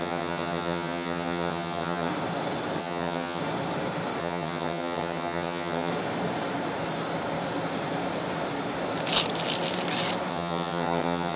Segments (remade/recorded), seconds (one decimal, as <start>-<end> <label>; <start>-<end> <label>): 0.0-2.1 remade; 2.1-2.8 recorded; 2.8-3.4 remade; 3.4-4.2 recorded; 4.2-5.9 remade; 5.9-10.3 recorded; 10.3-11.4 remade